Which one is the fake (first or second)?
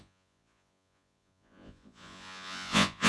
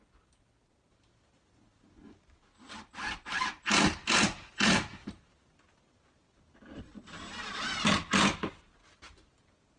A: first